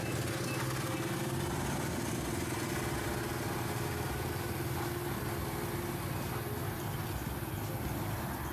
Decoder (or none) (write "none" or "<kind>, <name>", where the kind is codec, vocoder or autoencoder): none